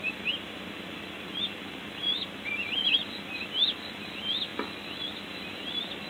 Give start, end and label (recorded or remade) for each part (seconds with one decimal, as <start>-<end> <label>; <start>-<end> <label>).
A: 0.0-6.1 recorded